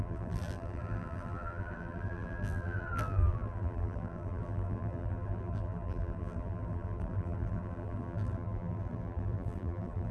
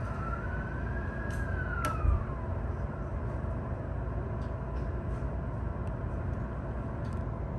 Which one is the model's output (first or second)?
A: first